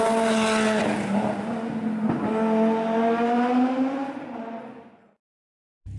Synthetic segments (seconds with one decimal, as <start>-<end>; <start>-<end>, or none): none